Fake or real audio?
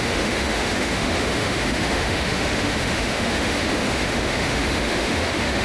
fake